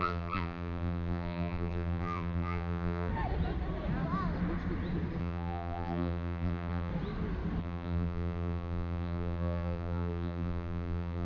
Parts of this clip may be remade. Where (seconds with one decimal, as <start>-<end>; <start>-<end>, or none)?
0.0-3.1; 5.2-6.9; 7.6-11.2